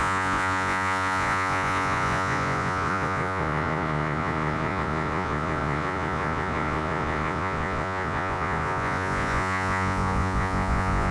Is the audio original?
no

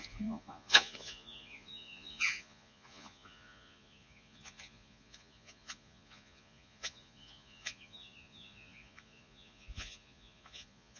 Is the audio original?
no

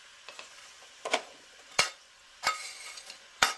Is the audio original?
no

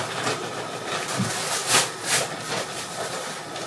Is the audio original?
yes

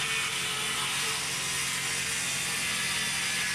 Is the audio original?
yes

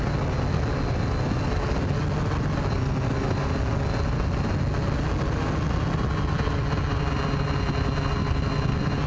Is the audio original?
yes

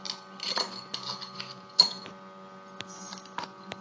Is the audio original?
yes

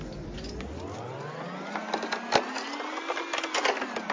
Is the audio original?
yes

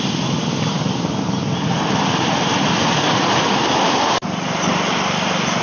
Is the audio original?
yes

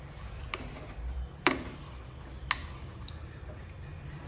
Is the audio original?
yes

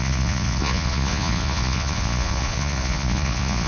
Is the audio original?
no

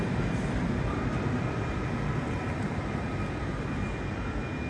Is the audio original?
yes